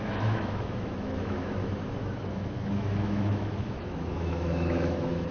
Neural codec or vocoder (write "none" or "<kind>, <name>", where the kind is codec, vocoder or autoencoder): autoencoder, DAC-VAE